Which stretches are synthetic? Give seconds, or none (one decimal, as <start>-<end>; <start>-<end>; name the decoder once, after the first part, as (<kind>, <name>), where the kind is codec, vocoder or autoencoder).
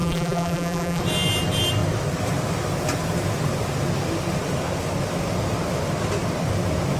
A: 0.0-1.0 (vocoder, BigVGAN v2)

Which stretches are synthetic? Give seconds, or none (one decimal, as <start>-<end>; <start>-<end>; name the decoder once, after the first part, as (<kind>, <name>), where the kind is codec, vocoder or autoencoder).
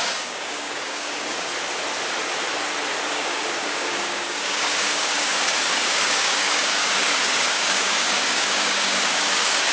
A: 0.0-1.5 (codec, DAC); 3.1-9.7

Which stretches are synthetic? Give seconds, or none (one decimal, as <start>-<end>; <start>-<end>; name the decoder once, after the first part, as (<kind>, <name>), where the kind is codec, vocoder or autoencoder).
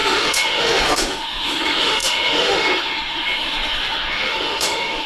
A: 0.0-5.1 (autoencoder, DAC-VAE)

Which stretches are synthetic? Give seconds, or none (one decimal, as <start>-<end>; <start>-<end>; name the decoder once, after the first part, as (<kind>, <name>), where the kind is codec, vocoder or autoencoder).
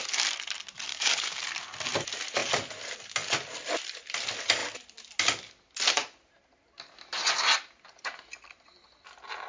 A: 0.9-1.4 (codec, DAC)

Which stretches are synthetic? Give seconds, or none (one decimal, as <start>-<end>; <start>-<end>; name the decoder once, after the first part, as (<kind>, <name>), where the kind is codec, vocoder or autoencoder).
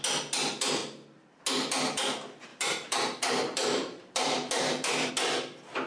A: 2.5-5.1 (vocoder, BigVGAN v2)